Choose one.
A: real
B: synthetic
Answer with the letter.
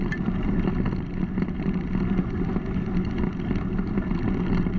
A